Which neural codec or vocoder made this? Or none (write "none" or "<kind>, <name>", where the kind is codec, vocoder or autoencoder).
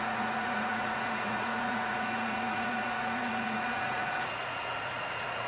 vocoder, Vocos